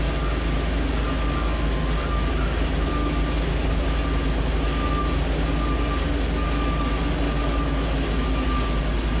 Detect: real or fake real